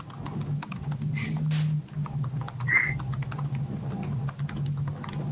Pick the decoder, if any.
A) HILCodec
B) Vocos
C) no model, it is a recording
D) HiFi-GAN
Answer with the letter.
C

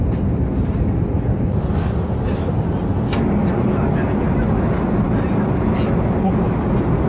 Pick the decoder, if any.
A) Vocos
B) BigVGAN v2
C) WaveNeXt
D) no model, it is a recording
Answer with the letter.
D